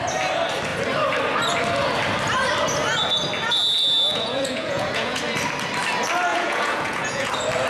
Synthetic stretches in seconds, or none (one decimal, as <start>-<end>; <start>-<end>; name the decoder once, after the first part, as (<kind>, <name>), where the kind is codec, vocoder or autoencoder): 4.1-5.2 (vocoder, Vocos); 6.3-7.3